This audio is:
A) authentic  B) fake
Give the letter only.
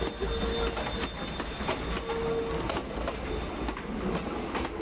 A